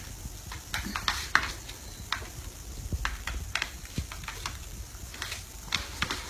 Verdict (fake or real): real